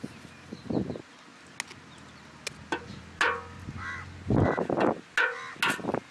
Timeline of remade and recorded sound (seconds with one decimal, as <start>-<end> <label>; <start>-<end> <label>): 0.0-6.1 recorded